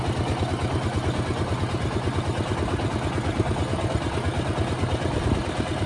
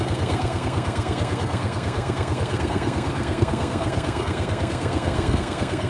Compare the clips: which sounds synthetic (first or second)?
second